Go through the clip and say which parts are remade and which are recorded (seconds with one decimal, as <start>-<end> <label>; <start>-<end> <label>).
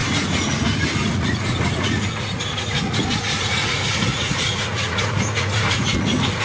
0.0-6.4 remade